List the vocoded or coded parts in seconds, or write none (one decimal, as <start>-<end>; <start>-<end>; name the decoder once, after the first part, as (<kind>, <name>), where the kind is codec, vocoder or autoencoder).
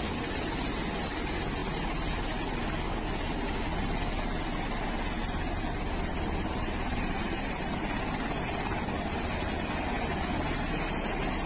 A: 6.1-7.5 (vocoder, BigVGAN v2)